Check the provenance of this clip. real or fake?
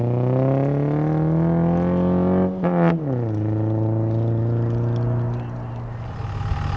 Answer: real